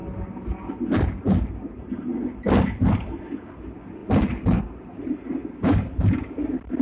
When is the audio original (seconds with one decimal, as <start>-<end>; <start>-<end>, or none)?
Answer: 0.0-6.8